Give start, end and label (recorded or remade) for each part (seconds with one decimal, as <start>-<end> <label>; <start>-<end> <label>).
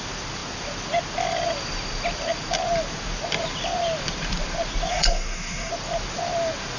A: 0.0-4.9 recorded; 4.9-5.7 remade; 5.7-6.8 recorded